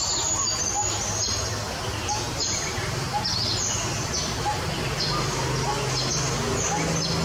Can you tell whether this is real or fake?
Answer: real